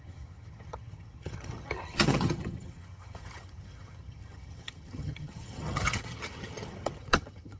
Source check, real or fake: fake